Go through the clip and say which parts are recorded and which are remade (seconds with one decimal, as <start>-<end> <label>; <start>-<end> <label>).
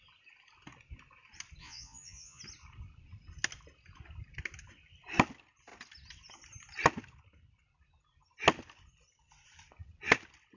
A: 0.0-1.6 recorded; 1.6-2.4 remade; 2.4-10.6 recorded